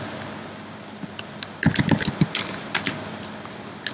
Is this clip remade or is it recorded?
recorded